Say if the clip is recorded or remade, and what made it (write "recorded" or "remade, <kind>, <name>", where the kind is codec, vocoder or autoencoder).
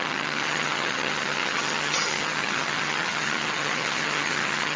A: remade, vocoder, HiFi-GAN